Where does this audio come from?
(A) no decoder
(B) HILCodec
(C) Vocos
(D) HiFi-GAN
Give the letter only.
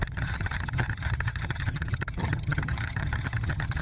D